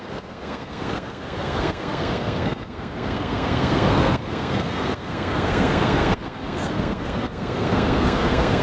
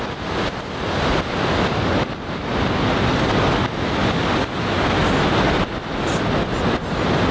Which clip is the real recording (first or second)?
second